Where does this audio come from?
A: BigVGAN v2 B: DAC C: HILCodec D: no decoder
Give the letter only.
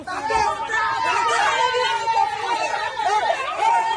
D